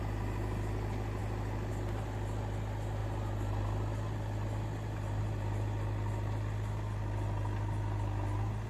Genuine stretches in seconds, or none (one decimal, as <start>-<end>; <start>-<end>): 0.0-8.7